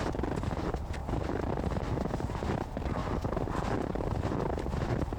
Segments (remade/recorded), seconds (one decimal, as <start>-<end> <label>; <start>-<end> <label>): 0.0-5.2 recorded